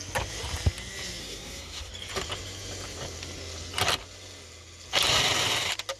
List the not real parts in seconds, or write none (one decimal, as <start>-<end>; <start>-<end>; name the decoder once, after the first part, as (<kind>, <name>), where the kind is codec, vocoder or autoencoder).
1.2-1.9 (codec, SNAC)